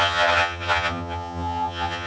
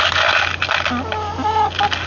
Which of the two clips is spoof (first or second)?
first